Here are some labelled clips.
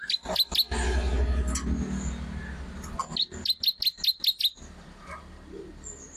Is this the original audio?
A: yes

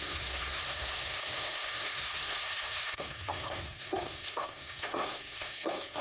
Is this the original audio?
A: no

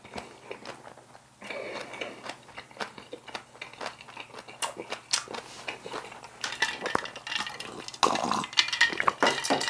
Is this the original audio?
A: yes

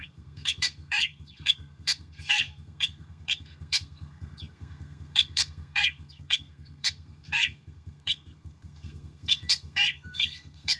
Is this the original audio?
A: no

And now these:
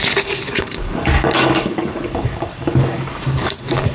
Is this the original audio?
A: no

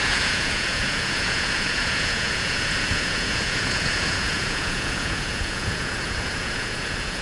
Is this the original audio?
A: no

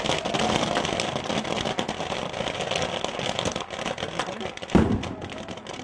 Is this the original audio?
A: yes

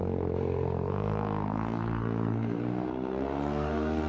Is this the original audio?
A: no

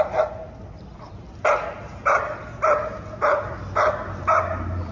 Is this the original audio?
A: yes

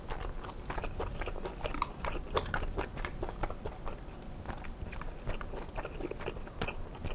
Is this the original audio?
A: yes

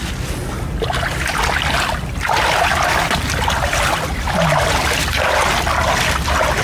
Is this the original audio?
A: yes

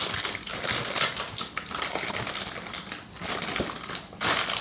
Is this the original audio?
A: yes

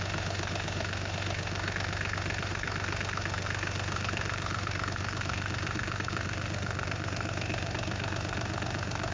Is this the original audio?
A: no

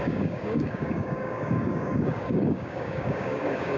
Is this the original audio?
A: no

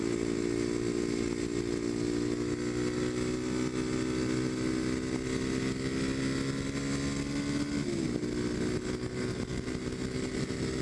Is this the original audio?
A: yes